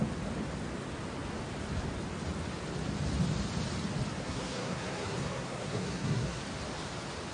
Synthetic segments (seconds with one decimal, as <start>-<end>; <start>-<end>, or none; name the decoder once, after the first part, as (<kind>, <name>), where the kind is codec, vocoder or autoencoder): 4.2-6.4 (codec, SNAC)